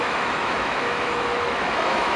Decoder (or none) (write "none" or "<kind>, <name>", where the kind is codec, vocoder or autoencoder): autoencoder, DAC-VAE